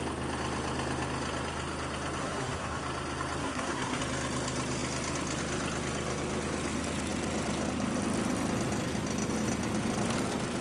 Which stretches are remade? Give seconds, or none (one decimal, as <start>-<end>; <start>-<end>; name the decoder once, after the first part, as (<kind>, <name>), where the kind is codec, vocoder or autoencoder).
2.2-2.8 (codec, SNAC); 3.4-4.0